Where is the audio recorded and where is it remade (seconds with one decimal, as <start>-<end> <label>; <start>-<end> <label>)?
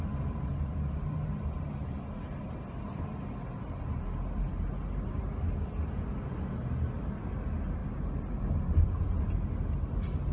0.0-10.3 recorded